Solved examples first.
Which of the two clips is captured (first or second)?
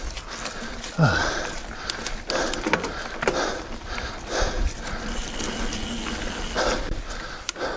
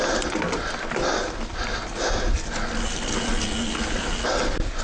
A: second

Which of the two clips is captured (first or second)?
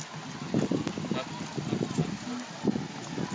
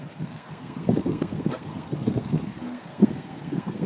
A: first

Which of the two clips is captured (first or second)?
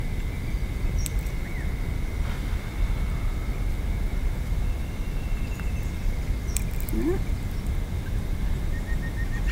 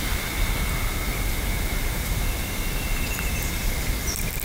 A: first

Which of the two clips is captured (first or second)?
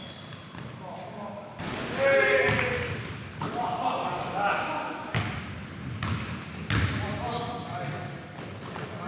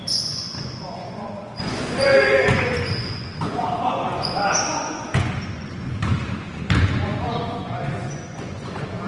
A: first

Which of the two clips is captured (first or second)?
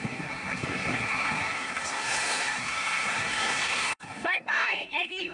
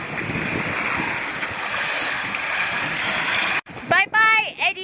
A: second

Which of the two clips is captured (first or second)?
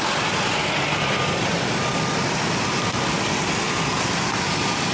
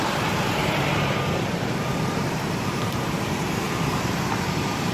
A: first